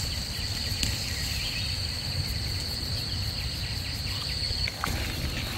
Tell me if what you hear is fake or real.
real